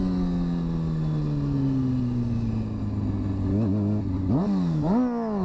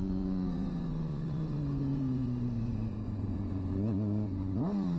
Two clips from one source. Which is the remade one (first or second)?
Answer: second